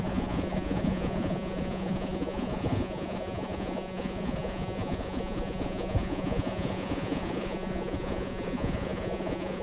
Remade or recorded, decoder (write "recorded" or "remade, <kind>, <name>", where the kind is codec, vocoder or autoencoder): remade, vocoder, Vocos